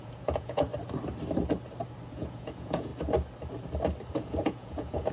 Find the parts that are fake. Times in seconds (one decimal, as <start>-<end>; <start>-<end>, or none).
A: 0.0-0.7; 2.2-2.9; 4.1-5.1